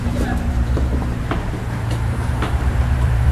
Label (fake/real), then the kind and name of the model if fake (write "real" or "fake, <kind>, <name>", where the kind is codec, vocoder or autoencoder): fake, vocoder, BigVGAN v2